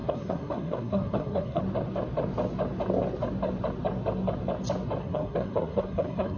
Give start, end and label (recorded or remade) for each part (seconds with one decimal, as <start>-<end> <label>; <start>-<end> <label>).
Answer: 0.0-1.6 remade; 1.6-5.0 recorded; 5.0-6.4 remade